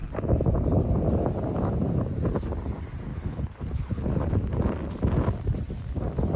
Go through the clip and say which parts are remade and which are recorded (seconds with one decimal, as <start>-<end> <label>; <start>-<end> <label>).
0.0-3.1 recorded; 3.1-4.4 remade; 4.4-6.4 recorded